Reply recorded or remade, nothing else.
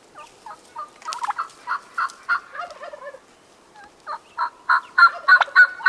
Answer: recorded